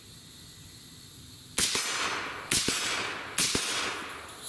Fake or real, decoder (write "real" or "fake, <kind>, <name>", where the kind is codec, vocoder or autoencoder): real